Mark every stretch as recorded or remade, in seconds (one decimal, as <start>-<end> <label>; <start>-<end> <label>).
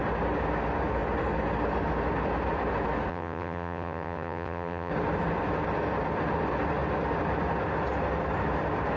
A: 0.0-3.1 recorded; 3.1-4.9 remade; 4.9-9.0 recorded